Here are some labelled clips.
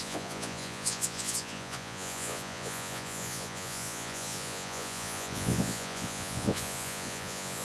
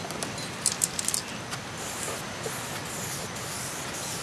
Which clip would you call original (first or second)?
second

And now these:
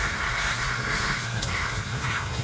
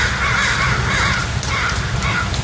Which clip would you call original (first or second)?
second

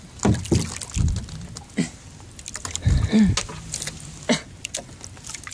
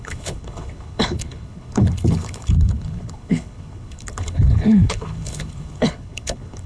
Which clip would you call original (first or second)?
first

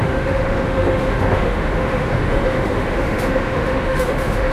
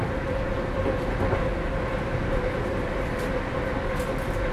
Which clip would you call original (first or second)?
second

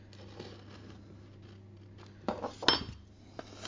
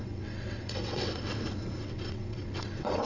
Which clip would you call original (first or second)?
first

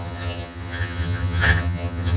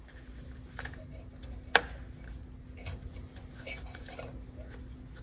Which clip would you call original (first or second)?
second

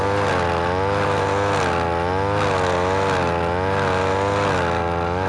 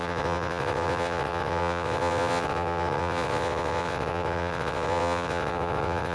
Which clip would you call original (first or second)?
first